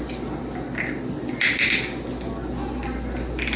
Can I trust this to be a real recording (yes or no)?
yes